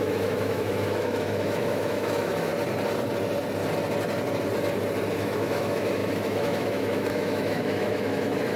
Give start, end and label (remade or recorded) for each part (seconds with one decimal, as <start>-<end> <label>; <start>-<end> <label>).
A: 0.0-2.5 remade; 2.5-5.1 recorded; 5.1-8.6 remade